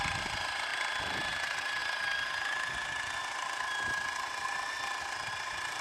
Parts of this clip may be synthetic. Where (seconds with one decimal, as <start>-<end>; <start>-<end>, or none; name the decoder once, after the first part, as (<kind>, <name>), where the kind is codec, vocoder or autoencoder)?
none